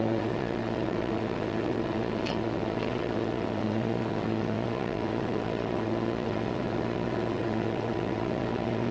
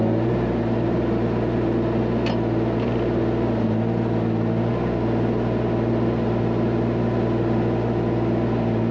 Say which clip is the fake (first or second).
first